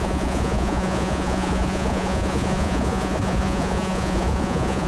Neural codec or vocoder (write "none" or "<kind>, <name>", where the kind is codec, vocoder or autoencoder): vocoder, Vocos